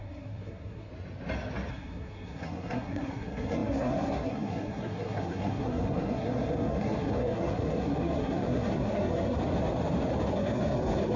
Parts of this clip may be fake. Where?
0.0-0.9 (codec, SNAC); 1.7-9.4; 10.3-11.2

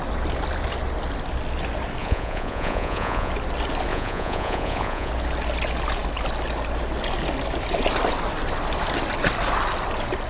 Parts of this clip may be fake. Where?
2.0-3.3 (vocoder, Vocos); 3.9-5.1

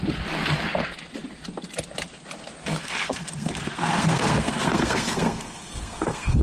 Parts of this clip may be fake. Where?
2.6-6.4 (codec, SNAC)

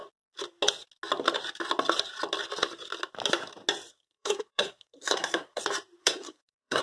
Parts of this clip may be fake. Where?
3.9-5.6 (codec, SNAC); 6.0-6.8

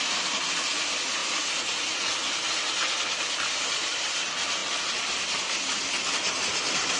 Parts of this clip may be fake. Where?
none

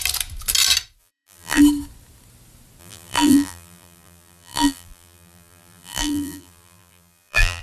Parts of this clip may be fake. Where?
1.0-1.6 (vocoder, BigVGAN v2); 2.8-7.6